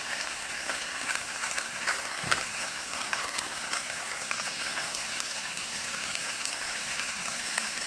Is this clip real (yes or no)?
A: no